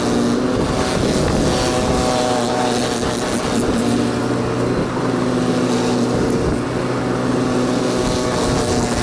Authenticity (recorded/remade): recorded